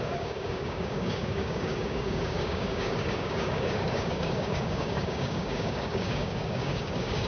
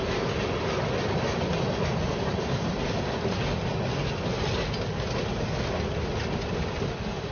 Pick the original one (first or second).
second